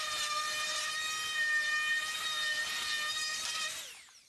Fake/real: real